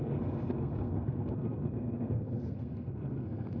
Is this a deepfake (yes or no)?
yes